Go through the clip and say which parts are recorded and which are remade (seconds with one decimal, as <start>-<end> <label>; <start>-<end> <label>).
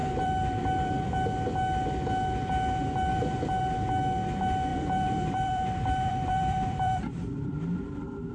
0.0-1.1 remade; 1.1-3.1 recorded; 3.1-3.6 remade; 3.6-4.7 recorded; 4.7-7.5 remade; 7.5-8.3 recorded